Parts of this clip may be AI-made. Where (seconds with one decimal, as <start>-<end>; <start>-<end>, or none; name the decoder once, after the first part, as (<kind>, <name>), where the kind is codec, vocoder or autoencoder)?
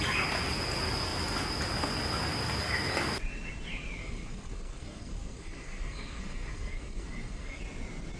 4.0-7.6 (codec, SNAC)